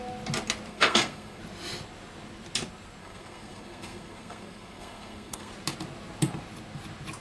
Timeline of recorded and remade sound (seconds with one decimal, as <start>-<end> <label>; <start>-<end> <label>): 0.0-0.7 recorded; 0.7-1.4 remade; 1.4-3.0 recorded; 3.0-5.5 remade; 5.5-7.2 recorded